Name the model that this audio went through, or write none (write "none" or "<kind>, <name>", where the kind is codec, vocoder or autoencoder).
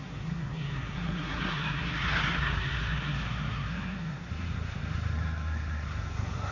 codec, SNAC